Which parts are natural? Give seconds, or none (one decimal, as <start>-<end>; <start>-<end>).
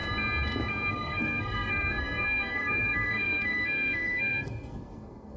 0.0-0.9